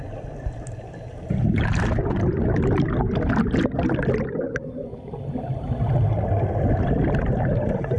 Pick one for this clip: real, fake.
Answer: real